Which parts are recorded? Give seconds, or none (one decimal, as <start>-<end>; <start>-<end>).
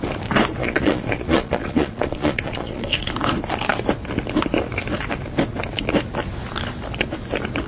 0.0-0.6; 3.1-7.7